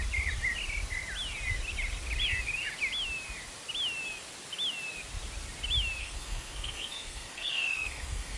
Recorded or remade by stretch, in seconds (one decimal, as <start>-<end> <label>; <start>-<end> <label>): 0.0-6.0 recorded; 6.0-8.4 remade